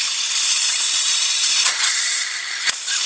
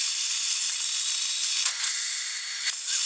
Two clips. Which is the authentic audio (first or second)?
second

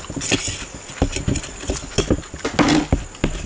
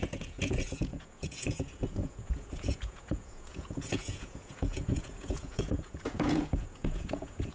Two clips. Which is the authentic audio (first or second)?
first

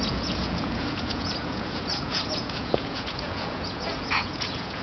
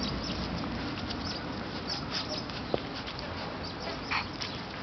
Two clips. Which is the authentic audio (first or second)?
second